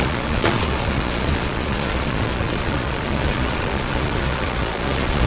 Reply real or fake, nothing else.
fake